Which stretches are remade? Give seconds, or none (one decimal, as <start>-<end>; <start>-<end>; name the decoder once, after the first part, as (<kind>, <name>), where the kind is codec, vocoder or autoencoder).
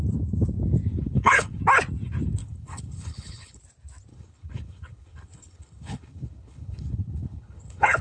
0.9-1.6 (codec, HILCodec); 2.4-3.6; 4.1-8.0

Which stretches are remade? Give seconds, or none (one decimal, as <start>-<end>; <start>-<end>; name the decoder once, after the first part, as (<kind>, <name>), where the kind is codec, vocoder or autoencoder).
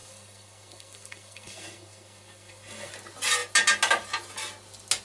0.0-2.9 (codec, SNAC)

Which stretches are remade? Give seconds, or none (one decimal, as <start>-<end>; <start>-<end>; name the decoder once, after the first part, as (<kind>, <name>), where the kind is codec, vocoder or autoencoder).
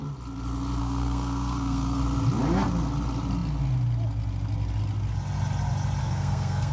0.8-2.0 (codec, SNAC); 6.0-6.7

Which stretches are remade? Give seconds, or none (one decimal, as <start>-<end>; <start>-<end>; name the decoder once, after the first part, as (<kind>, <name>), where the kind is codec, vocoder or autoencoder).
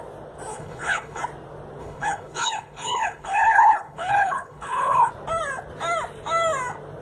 0.5-1.2 (codec, HILCodec); 1.8-5.1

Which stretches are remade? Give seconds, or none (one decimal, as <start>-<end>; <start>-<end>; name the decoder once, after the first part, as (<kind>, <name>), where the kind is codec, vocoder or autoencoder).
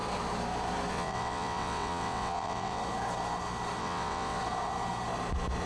0.9-2.8 (vocoder, WaveNeXt); 3.8-4.4